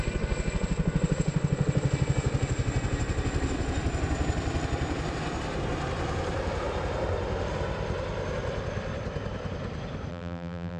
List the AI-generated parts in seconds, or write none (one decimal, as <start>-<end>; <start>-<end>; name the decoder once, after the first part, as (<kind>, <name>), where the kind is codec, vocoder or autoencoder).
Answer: 10.1-10.8 (vocoder, BigVGAN v2)

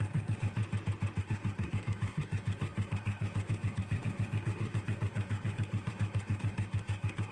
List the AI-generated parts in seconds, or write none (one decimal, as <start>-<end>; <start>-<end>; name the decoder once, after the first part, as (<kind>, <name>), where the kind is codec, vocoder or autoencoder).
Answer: 0.0-0.6 (codec, SNAC); 1.2-7.3

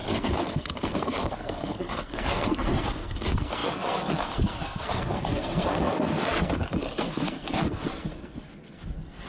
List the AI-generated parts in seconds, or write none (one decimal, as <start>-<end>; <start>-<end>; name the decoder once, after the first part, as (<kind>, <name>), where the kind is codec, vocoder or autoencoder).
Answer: 0.0-9.3 (codec, SNAC)

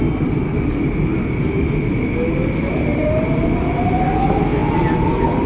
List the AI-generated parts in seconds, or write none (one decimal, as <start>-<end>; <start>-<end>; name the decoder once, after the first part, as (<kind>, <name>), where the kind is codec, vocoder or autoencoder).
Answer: 2.7-3.2 (autoencoder, DAC-VAE)

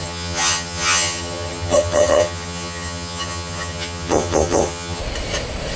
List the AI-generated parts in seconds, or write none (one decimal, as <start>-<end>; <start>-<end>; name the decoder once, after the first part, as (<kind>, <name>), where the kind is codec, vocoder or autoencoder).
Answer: 0.0-5.0 (vocoder, HiFi-GAN)

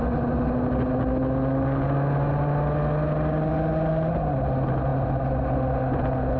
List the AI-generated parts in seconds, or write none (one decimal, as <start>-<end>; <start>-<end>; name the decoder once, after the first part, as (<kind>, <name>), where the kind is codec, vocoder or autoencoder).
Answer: none